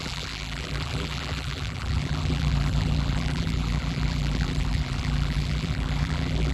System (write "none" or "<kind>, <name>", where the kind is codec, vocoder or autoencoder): vocoder, BigVGAN v2